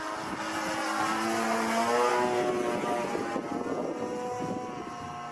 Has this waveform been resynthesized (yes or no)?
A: no